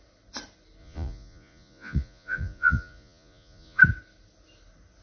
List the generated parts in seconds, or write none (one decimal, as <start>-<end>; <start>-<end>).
0.8-3.8